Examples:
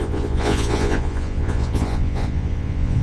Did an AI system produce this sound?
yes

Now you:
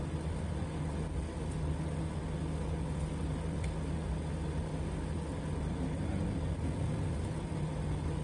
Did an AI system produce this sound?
no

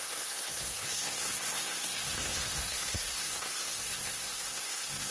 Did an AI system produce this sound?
yes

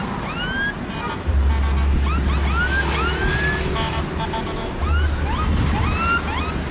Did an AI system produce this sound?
no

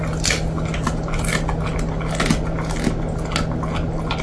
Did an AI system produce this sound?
no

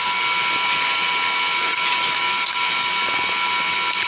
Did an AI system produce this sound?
no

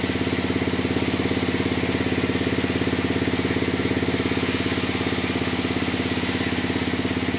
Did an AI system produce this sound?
no